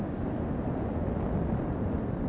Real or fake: real